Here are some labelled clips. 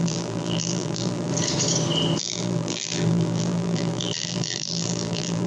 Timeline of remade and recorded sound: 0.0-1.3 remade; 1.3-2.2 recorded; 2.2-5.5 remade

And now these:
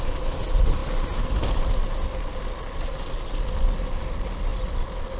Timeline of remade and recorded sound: 0.0-4.5 recorded; 4.5-5.2 remade

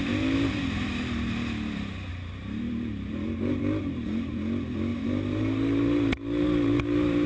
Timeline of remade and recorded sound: 0.0-2.1 recorded; 2.1-3.6 remade; 3.6-4.9 recorded; 4.9-7.3 remade

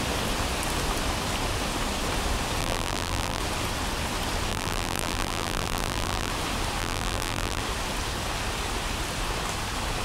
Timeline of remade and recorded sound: 0.0-2.6 recorded; 2.6-3.4 remade; 3.4-4.5 recorded; 4.5-6.3 remade; 6.3-6.8 recorded; 6.8-7.6 remade; 7.6-10.0 recorded

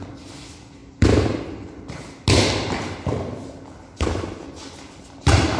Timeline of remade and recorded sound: 0.0-5.6 recorded

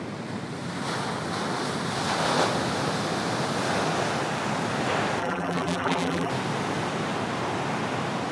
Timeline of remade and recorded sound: 0.0-5.2 recorded; 5.2-6.3 remade; 6.3-8.3 recorded

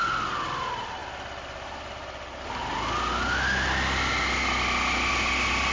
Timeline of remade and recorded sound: 0.0-5.7 recorded